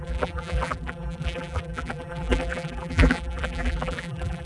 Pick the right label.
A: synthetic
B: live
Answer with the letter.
A